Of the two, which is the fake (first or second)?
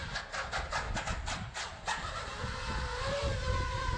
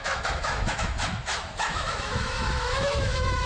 second